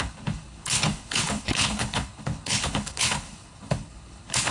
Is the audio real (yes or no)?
no